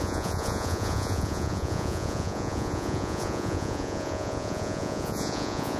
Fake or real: fake